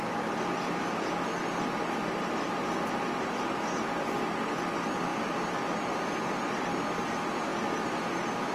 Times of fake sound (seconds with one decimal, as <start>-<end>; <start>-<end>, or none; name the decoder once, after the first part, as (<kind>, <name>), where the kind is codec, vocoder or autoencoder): none